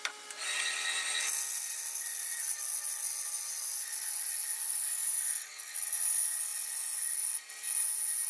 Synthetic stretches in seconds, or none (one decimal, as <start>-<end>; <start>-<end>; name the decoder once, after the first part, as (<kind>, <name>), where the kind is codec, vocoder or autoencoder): none